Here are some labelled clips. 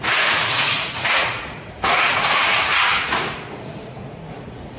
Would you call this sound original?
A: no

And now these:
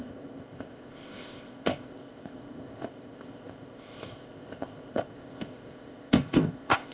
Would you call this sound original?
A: no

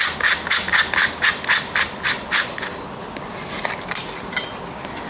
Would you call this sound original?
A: yes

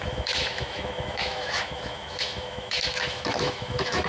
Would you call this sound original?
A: no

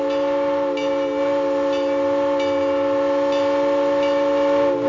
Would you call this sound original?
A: yes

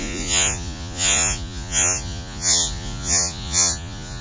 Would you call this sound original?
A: no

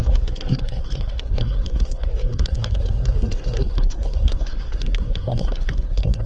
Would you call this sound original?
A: no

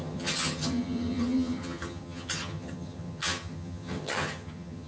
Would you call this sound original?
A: no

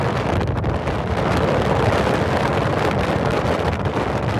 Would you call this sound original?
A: yes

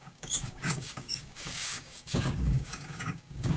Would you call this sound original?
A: no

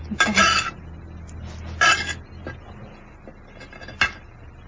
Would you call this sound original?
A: yes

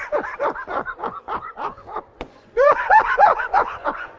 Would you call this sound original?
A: no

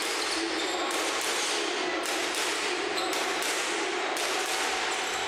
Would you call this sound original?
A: no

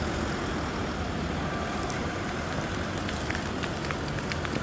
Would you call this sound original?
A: yes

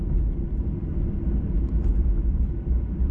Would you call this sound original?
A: yes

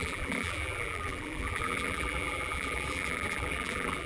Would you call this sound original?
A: no